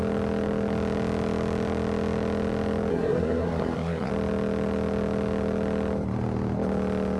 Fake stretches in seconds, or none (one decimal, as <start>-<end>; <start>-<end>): 2.9-4.1

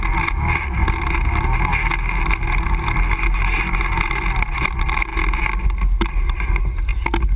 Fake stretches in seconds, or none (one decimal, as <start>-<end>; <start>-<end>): none

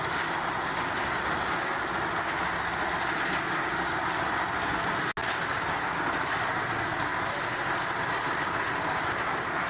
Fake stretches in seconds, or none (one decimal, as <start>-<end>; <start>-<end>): none